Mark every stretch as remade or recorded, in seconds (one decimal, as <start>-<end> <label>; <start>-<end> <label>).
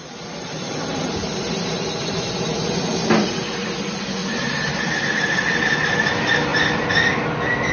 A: 0.0-1.2 recorded; 1.2-2.9 remade; 2.9-4.2 recorded; 4.2-6.1 remade; 6.1-7.7 recorded